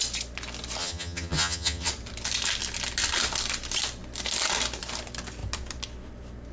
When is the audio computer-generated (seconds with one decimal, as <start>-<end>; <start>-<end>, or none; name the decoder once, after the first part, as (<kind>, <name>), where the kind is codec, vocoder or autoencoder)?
0.8-1.9 (vocoder, HiFi-GAN)